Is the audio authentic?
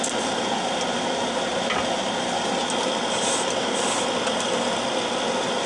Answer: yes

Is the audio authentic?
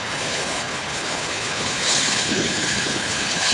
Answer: no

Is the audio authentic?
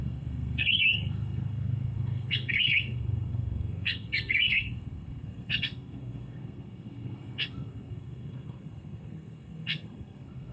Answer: no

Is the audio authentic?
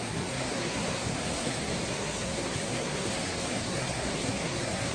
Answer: no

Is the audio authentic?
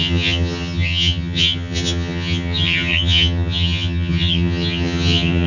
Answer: no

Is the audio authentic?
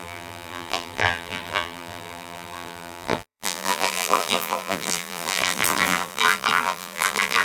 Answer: no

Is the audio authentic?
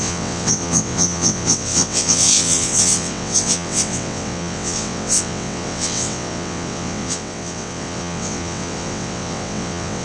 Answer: no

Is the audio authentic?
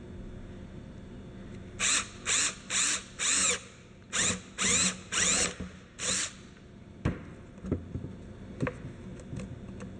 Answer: yes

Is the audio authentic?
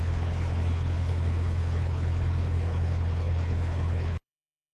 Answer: no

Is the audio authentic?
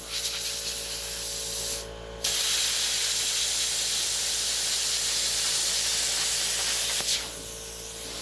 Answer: yes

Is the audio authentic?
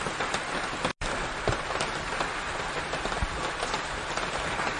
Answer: yes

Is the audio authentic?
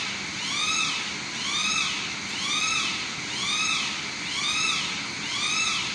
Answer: yes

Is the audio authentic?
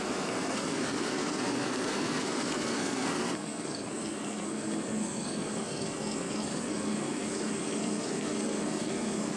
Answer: no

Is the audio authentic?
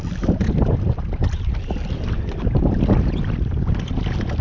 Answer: yes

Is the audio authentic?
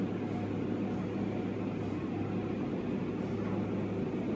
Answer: yes